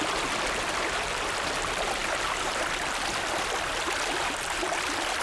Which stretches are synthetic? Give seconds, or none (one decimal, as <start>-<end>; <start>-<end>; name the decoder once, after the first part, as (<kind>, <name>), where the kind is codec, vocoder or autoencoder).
none